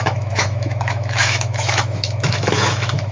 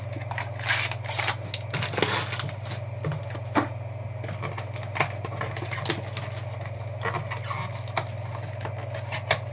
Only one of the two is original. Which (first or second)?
second